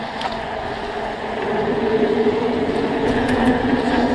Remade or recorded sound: remade